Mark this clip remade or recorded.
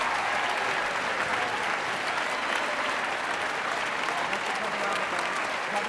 recorded